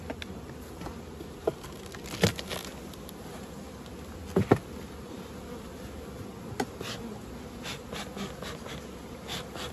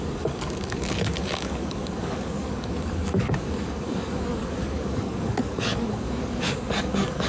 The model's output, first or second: second